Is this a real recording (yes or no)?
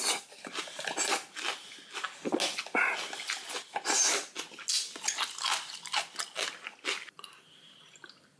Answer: yes